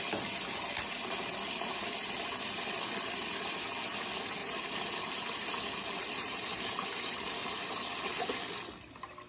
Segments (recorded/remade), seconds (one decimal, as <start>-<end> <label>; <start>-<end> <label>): 0.0-4.4 recorded; 4.4-7.4 remade; 7.4-9.3 recorded